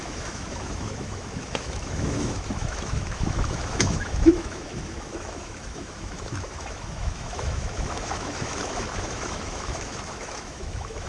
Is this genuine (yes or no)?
no